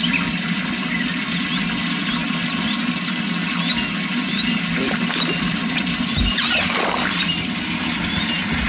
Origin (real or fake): real